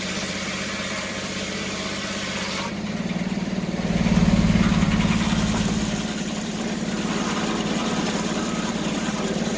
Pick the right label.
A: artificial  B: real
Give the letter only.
A